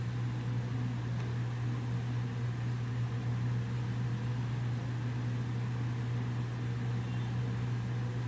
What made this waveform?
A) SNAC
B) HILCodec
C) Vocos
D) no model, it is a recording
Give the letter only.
D